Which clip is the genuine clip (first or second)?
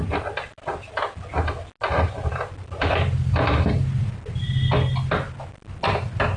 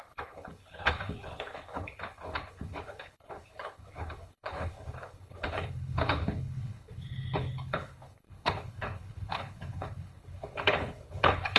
first